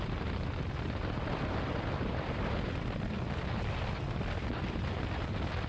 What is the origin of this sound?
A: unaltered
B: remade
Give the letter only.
A